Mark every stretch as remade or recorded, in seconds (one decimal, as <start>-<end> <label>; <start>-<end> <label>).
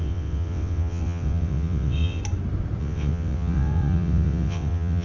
0.0-2.2 remade; 2.2-2.8 recorded; 2.8-5.0 remade